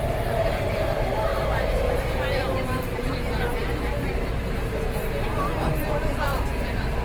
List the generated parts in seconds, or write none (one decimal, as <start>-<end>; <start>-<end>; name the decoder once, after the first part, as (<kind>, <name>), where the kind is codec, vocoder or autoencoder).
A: none